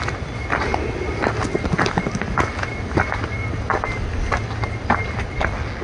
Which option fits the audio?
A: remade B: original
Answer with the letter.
B